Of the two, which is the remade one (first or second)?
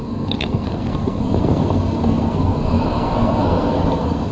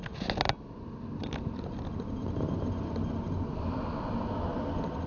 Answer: first